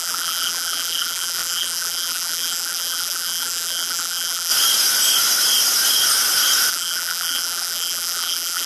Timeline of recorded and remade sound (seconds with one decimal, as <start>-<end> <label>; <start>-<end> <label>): 0.0-4.5 remade; 4.5-6.7 recorded; 6.7-8.7 remade